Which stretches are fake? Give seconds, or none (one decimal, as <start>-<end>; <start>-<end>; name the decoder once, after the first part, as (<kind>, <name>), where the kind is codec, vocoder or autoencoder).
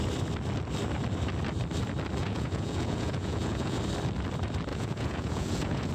2.2-3.8 (vocoder, Vocos); 4.7-5.9